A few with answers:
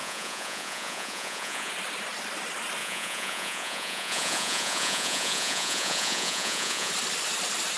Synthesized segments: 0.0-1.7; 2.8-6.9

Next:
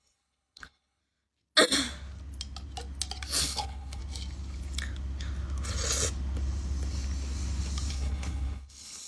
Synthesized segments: 0.0-1.0; 3.4-4.0; 7.9-9.1

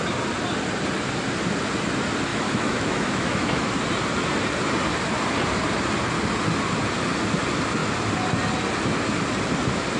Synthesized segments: 2.3-3.7

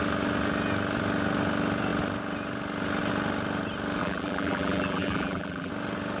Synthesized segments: 4.0-5.7

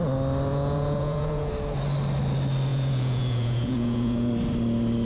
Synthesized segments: 0.5-1.5; 2.7-4.3

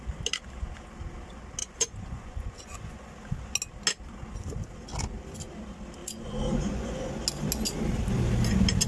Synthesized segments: 1.6-3.1; 6.0-7.1

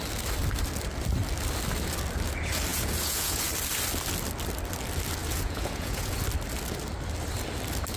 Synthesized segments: 2.7-3.5; 5.2-6.2

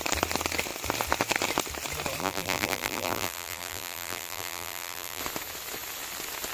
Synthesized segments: 2.2-5.2